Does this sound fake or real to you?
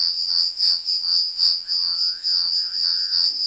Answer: fake